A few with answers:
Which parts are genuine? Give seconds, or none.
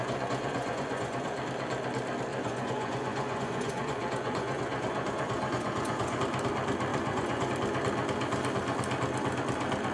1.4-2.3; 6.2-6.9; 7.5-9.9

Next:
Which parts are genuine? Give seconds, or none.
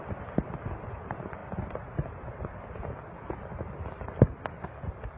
0.0-5.2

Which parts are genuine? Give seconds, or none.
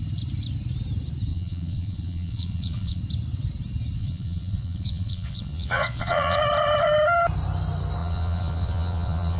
0.0-1.3; 3.0-4.0; 6.4-8.0